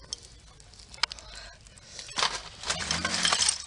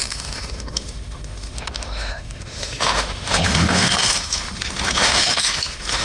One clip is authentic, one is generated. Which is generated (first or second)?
second